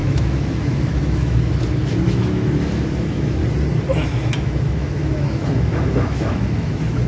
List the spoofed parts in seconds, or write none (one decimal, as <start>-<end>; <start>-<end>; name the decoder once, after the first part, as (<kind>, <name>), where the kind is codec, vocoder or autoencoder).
0.0-3.4 (autoencoder, DAC-VAE); 3.9-7.1